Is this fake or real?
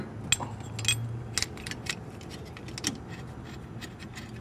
real